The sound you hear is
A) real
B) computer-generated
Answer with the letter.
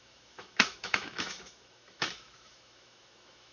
B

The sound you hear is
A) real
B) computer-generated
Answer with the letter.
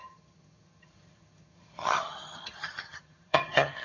B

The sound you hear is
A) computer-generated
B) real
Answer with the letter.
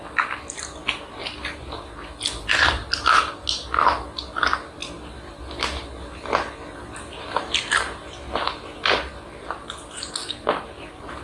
B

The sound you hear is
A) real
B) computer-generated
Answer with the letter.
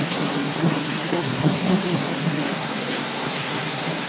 B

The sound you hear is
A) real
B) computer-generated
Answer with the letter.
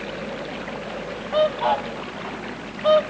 A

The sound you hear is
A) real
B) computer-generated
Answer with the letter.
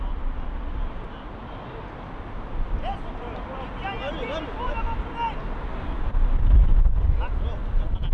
A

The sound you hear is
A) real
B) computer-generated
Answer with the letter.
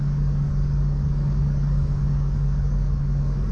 B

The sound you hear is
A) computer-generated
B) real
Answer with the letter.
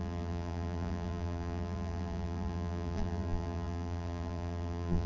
A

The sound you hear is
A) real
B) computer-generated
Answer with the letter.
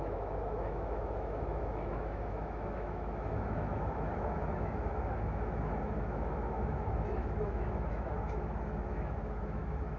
B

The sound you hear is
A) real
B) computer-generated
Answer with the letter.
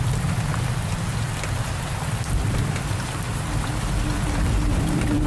B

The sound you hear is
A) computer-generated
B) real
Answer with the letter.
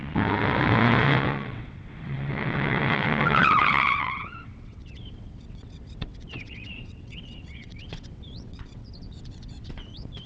A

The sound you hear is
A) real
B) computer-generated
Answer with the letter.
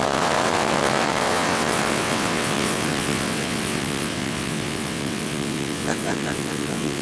B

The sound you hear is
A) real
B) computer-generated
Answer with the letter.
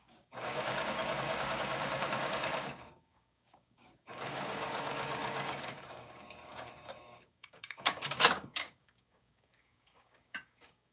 B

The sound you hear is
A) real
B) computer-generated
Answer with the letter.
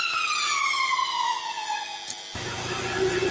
A